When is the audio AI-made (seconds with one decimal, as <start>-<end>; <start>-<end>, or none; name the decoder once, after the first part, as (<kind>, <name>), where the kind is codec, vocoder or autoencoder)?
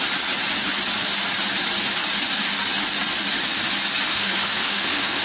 4.1-5.2 (autoencoder, DAC-VAE)